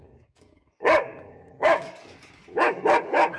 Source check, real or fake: fake